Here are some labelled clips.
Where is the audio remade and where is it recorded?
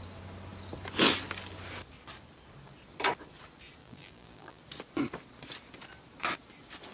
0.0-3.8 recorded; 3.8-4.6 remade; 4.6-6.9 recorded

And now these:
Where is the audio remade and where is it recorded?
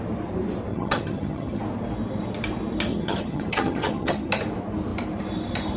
0.0-0.7 recorded; 0.7-1.6 remade; 1.6-2.9 recorded; 2.9-4.3 remade; 4.3-5.8 recorded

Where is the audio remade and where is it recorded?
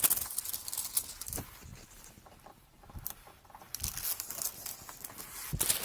0.0-5.8 recorded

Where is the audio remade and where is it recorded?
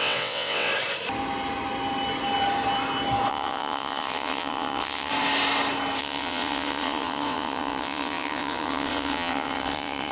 0.0-0.7 remade; 0.7-3.3 recorded; 3.3-5.1 remade; 5.1-6.0 recorded; 6.0-10.1 remade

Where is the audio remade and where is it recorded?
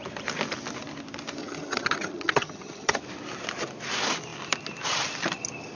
0.0-1.4 recorded; 1.4-3.0 remade; 3.0-5.8 recorded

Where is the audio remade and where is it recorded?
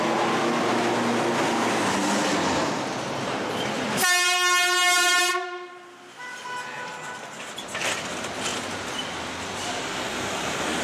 0.0-10.8 recorded